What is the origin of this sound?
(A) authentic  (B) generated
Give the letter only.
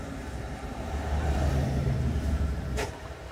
B